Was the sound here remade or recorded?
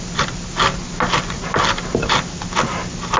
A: recorded